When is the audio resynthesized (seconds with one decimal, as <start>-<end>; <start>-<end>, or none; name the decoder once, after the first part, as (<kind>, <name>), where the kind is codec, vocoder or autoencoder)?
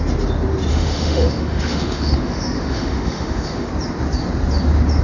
0.7-3.7 (autoencoder, DAC-VAE)